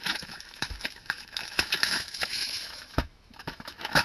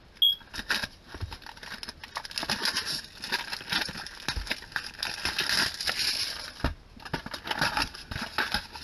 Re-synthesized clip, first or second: first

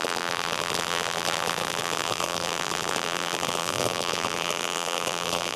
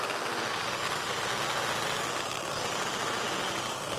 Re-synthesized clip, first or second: first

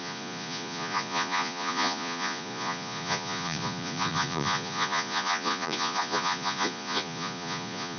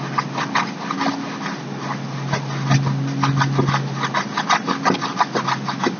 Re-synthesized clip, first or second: first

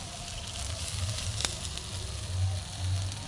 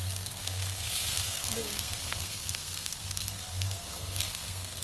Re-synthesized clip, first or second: second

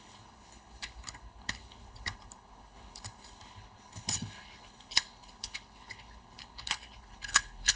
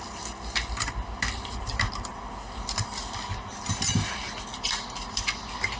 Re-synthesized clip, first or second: first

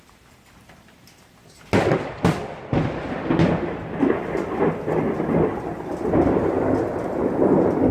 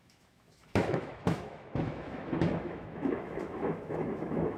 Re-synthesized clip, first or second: second